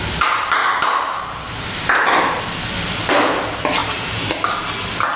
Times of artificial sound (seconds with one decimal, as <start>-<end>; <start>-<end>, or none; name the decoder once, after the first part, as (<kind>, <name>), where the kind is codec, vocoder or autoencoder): 0.6-2.4 (vocoder, BigVGAN v2); 3.8-4.6